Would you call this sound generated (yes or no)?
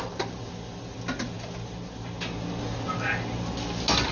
no